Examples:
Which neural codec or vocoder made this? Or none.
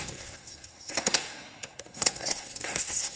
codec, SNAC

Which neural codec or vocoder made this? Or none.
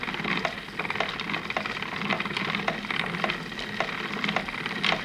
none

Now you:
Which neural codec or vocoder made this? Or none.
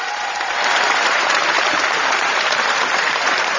vocoder, BigVGAN v2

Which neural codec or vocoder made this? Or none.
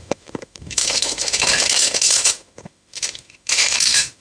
autoencoder, DAC-VAE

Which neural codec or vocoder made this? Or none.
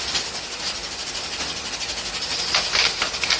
none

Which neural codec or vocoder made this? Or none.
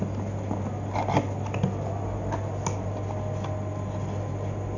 none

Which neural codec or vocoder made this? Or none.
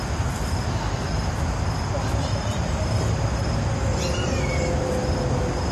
none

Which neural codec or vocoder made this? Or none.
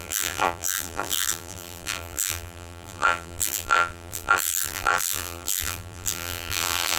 vocoder, BigVGAN v2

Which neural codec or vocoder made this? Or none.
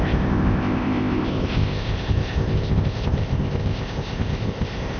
codec, ZipCodec